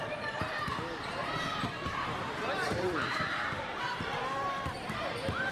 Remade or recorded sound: remade